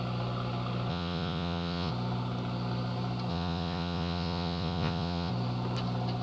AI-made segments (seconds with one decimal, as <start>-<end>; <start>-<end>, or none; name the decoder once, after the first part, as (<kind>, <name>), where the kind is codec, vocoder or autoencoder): 0.9-1.9 (vocoder, Vocos); 3.3-5.3